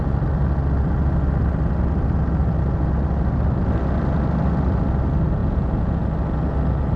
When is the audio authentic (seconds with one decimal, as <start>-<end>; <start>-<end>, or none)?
0.0-5.4; 6.0-7.0